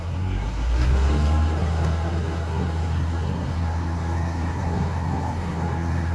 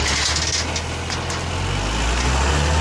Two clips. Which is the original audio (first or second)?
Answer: second